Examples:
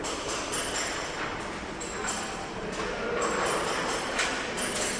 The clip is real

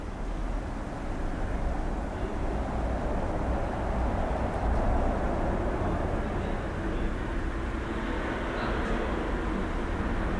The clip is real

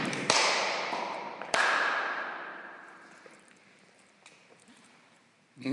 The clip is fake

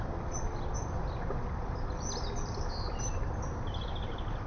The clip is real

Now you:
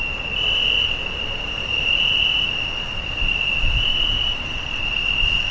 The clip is real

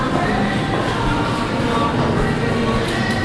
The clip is real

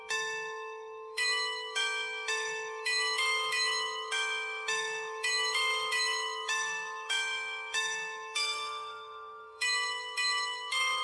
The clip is fake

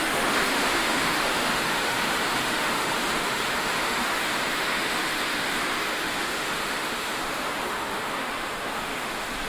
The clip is fake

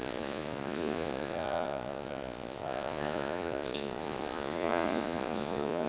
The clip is fake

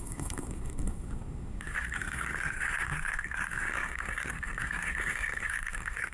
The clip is fake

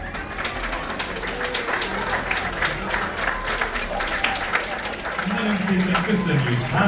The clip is real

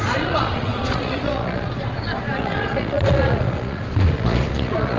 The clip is fake